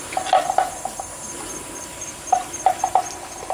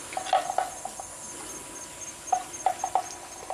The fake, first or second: first